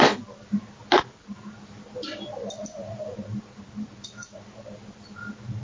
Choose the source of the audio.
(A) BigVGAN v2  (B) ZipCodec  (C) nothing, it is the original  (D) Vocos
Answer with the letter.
C